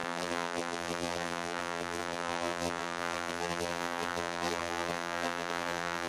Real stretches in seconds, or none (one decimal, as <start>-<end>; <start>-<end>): none